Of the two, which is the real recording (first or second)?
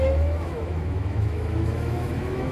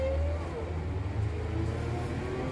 second